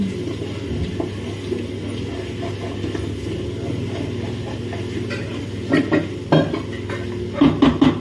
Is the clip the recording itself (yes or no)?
yes